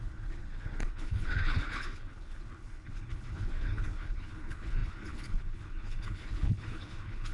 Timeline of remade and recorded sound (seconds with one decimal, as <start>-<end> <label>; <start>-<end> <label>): 0.0-7.3 remade